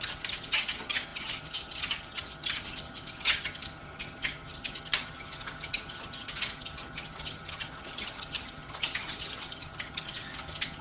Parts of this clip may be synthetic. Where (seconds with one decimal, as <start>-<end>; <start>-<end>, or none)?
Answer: 0.0-10.8